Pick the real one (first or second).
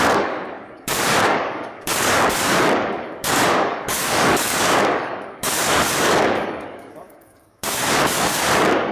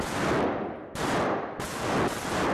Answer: second